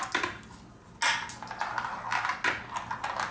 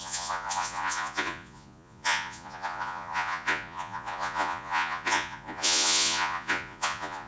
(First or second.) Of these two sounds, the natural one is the first